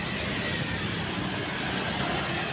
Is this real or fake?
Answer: real